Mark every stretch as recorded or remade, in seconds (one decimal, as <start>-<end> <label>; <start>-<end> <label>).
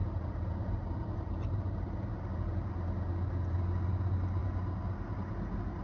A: 0.0-5.8 recorded